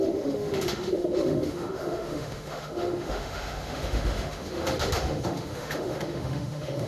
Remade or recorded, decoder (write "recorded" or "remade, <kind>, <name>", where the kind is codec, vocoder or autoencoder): remade, autoencoder, DAC-VAE